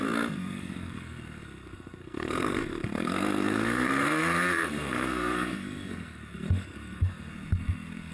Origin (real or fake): fake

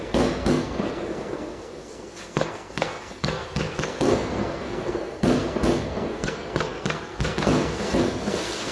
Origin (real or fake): fake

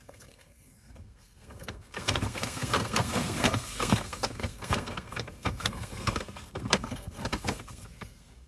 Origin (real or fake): fake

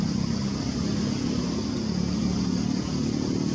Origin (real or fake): real